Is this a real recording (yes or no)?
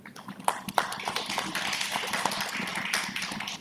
yes